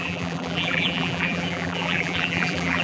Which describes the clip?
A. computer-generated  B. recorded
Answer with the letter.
A